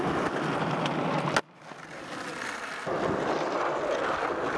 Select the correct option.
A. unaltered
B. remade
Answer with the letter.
A